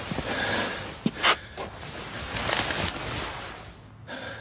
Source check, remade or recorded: recorded